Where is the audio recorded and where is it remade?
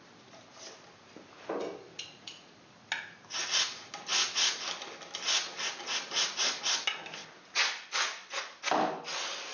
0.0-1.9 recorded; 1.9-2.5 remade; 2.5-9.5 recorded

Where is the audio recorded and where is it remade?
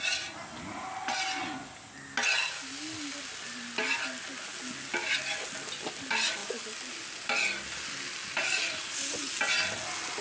0.0-10.2 recorded